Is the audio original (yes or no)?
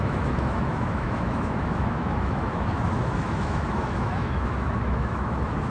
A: no